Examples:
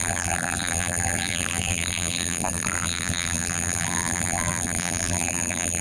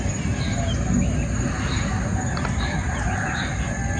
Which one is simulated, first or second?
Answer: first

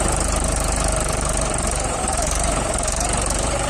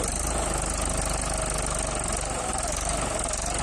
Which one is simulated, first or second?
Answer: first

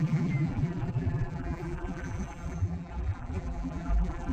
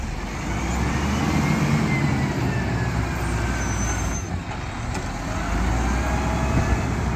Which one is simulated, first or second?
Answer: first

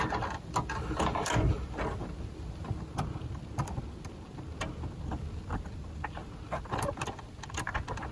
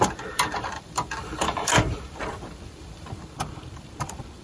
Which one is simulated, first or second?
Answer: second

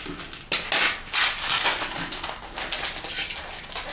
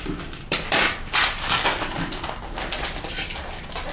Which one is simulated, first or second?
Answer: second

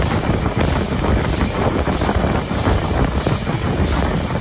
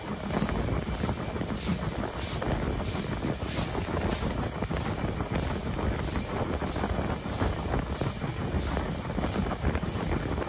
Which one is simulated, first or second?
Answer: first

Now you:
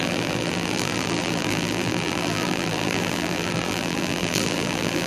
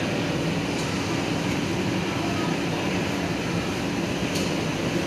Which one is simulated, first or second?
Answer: first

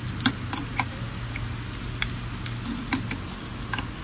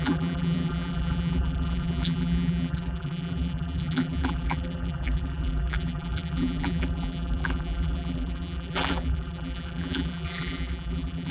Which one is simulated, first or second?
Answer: second